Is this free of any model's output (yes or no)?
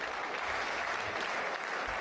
yes